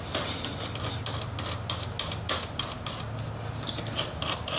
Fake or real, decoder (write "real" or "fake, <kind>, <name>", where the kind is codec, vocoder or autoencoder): real